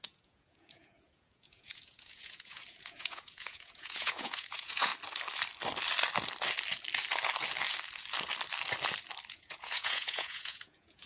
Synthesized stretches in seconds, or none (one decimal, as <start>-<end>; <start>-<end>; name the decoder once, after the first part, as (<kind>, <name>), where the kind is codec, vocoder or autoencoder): 0.0-4.9 (vocoder, Vocos); 9.3-11.1